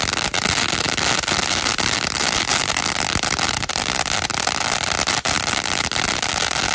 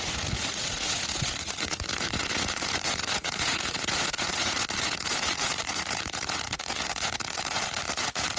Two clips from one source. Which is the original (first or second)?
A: first